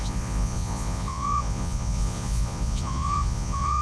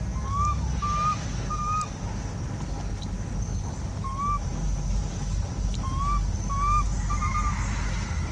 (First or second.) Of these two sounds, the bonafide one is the second